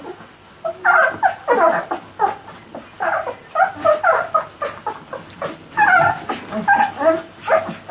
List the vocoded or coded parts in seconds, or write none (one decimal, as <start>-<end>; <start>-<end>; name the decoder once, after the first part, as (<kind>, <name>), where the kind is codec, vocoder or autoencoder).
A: none